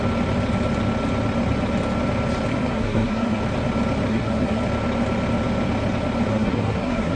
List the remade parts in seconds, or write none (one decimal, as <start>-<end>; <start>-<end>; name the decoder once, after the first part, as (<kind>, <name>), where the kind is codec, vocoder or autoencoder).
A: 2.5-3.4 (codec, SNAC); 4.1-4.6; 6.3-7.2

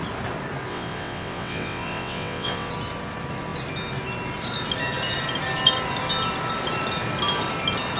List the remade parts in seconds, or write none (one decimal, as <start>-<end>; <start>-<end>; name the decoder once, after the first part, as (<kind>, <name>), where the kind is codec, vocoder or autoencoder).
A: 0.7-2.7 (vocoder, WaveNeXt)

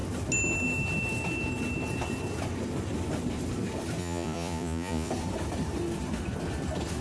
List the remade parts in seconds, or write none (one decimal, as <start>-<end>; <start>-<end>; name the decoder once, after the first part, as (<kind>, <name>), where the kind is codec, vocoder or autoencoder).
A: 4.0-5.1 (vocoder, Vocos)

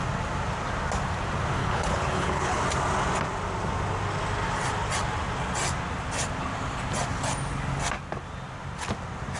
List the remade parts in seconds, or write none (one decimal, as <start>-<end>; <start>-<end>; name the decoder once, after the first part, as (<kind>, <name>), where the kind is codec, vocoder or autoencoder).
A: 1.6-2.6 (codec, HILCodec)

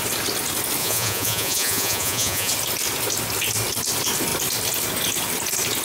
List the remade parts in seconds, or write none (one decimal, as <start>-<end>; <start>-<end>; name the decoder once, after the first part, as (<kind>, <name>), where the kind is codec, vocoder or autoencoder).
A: 0.8-2.5 (vocoder, Vocos)

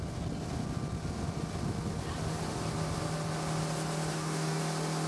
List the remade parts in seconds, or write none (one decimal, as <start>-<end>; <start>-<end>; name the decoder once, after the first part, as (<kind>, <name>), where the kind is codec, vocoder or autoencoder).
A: 4.1-4.6 (codec, DAC)